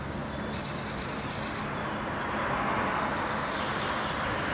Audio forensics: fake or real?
real